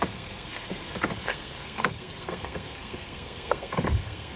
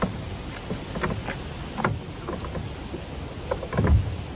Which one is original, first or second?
second